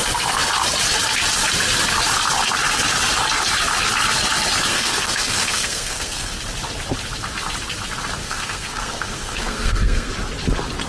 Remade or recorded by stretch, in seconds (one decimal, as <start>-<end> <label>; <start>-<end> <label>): 0.0-4.7 recorded; 4.7-6.4 remade; 6.4-8.2 recorded; 8.2-10.1 remade; 10.1-10.9 recorded